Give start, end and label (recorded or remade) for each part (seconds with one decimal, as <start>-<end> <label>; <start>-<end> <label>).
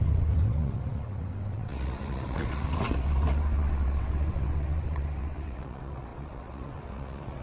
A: 0.0-7.4 remade